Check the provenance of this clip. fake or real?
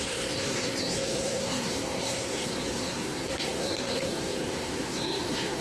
fake